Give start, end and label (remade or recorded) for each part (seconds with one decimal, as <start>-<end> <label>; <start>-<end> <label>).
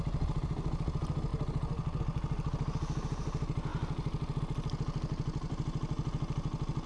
0.0-6.9 recorded